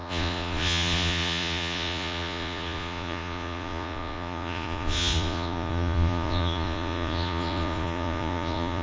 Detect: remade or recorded remade